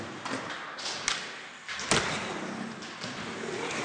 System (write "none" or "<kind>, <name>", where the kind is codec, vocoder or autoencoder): none